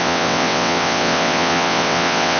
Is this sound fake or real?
fake